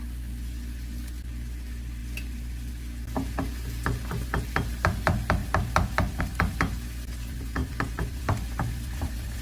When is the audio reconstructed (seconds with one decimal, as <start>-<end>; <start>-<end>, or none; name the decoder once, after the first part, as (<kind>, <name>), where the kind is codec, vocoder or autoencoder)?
2.0-2.7 (vocoder, BigVGAN v2); 7.6-8.2